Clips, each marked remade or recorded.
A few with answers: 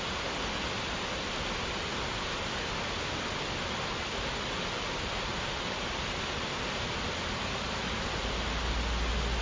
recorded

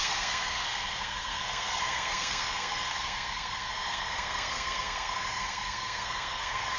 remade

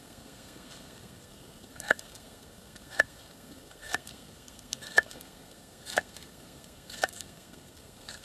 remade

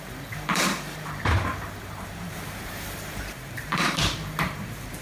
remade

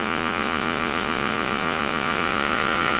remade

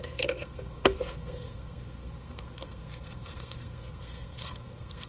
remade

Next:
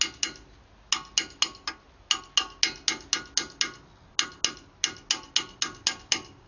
recorded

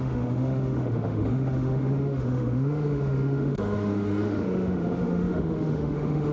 remade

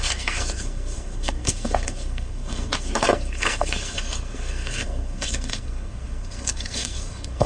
remade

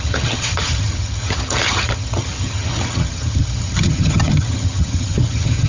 remade